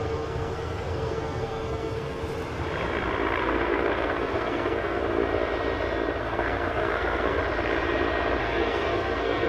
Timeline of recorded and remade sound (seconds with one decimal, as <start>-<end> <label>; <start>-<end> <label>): 0.0-2.2 remade; 2.2-3.4 recorded; 3.4-5.0 remade; 5.0-6.2 recorded; 6.2-7.4 remade; 7.4-8.4 recorded; 8.4-9.5 remade